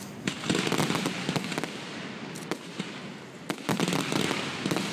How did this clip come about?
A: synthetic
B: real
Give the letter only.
B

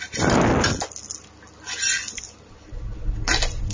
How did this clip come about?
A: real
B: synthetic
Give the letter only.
A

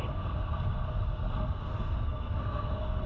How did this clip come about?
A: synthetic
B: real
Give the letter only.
A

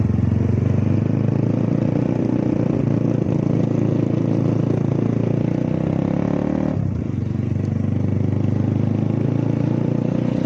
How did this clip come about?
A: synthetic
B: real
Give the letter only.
B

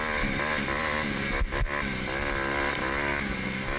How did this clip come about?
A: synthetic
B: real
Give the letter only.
B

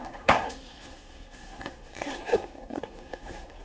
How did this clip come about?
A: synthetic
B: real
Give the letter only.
A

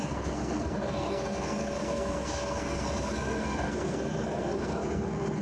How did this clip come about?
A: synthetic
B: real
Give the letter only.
A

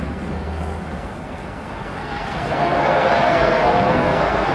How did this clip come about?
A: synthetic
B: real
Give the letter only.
A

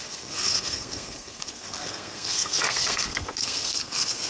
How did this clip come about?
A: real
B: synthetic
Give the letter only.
B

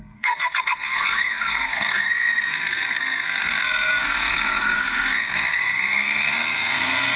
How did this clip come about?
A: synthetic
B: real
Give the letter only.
A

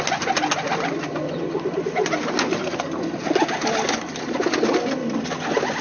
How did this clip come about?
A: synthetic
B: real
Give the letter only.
B